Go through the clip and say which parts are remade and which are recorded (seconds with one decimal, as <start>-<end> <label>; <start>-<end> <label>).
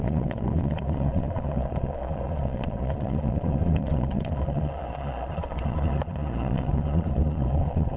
0.0-8.0 remade